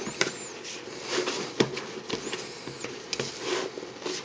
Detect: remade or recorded recorded